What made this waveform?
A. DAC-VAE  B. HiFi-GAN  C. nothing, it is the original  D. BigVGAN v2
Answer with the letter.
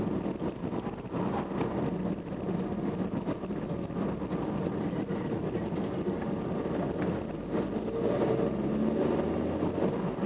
C